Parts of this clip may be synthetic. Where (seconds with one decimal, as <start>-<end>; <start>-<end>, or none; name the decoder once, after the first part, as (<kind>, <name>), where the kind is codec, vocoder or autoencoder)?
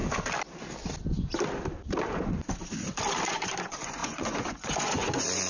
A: 3.3-5.5 (vocoder, Vocos)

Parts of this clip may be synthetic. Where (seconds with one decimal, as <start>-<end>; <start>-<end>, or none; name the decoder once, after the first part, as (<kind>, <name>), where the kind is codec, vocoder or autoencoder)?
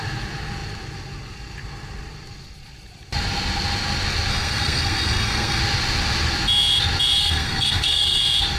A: 4.3-5.6 (codec, SNAC); 7.2-8.2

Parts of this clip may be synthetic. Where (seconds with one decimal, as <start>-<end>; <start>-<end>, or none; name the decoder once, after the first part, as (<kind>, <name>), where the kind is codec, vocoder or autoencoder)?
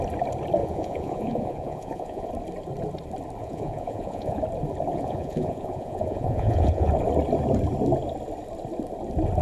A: 0.6-2.3 (vocoder, Vocos); 3.4-4.4; 4.9-6.9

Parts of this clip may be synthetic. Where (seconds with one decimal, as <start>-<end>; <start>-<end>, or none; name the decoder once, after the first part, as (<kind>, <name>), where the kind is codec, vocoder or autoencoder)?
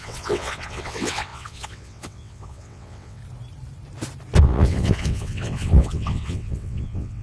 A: 0.0-3.2 (vocoder, WaveNeXt); 4.4-7.2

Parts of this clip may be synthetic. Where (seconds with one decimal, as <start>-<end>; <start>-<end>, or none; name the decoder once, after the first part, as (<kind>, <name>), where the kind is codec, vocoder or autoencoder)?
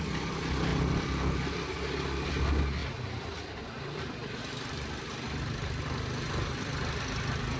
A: none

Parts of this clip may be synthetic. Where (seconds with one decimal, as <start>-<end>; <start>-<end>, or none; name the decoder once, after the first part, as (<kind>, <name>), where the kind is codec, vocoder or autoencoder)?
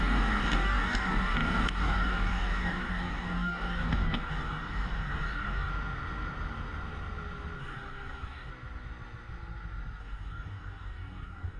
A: 0.0-5.7 (codec, DAC); 7.6-8.5; 10.0-11.6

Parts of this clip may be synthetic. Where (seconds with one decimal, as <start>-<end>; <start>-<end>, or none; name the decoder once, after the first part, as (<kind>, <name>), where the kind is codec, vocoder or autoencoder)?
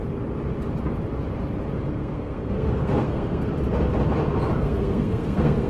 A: 1.9-3.5 (codec, SNAC); 4.6-5.7